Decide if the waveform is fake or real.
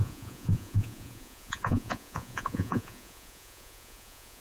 fake